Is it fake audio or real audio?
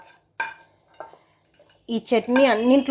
real